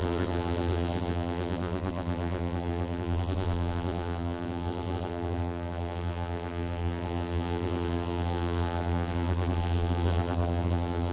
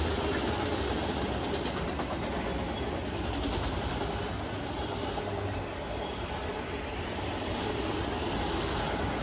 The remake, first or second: first